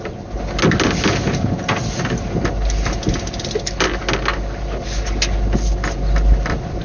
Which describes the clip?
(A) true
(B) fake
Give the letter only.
A